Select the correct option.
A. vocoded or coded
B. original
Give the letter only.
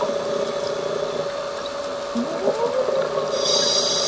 B